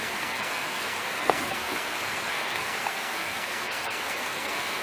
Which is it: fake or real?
fake